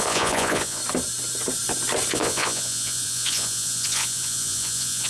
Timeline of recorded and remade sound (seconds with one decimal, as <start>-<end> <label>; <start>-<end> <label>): 0.0-0.8 remade; 0.8-2.1 recorded; 2.1-5.1 remade